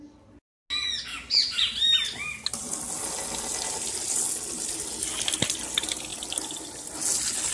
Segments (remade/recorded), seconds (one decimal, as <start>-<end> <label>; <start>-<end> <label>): 0.0-7.5 recorded